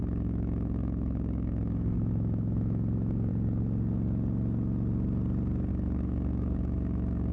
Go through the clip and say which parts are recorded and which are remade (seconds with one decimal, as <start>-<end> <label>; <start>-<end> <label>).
0.0-3.3 remade; 3.3-5.7 recorded; 5.7-7.3 remade